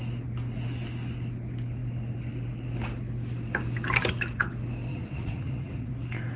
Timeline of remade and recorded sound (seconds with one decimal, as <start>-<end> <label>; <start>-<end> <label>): 0.0-4.9 recorded; 4.9-5.9 remade; 5.9-6.4 recorded